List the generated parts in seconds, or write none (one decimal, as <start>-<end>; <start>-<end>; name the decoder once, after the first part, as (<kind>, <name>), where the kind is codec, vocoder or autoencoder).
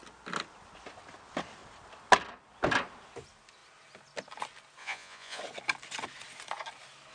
4.8-5.4 (vocoder, Vocos)